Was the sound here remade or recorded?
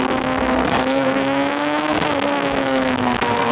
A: remade